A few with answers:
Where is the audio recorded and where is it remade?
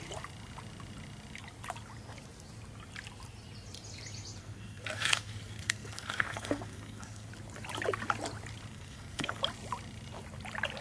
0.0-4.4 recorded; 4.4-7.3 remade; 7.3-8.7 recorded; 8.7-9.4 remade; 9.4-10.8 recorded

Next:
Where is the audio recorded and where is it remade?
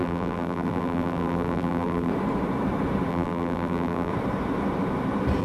0.0-2.1 remade; 2.1-3.1 recorded; 3.1-4.1 remade; 4.1-5.4 recorded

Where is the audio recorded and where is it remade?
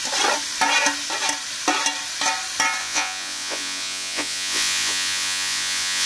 0.0-2.8 recorded; 2.8-6.1 remade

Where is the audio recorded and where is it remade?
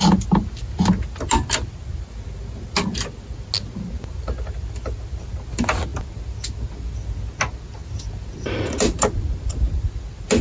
0.0-10.4 recorded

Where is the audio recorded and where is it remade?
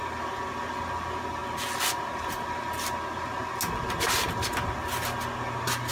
0.0-5.9 recorded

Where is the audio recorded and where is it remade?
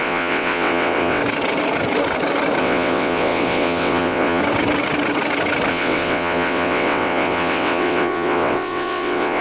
0.0-1.2 remade; 1.2-2.6 recorded; 2.6-4.4 remade; 4.4-5.7 recorded; 5.7-9.4 remade